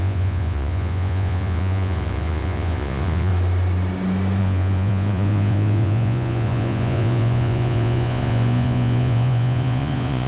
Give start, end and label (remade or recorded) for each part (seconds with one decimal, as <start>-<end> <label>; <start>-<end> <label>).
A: 0.0-3.3 remade; 3.3-4.4 recorded; 4.4-10.3 remade